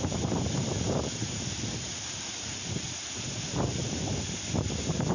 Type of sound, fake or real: fake